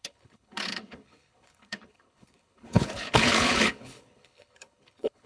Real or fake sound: fake